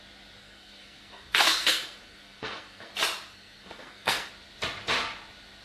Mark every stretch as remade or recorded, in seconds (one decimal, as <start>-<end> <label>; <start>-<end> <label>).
0.0-0.4 recorded; 0.4-2.9 remade; 2.9-3.3 recorded; 3.3-4.3 remade; 4.3-5.6 recorded